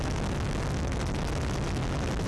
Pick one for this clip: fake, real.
real